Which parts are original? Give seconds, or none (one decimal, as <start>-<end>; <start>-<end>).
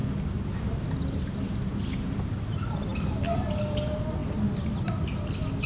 0.0-5.7